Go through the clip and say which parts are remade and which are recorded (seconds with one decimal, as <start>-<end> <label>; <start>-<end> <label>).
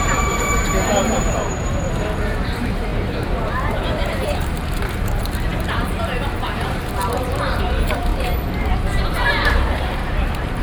0.0-10.6 remade